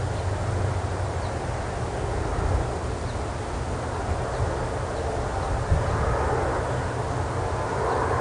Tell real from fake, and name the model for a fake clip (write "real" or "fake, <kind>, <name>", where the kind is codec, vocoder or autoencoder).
real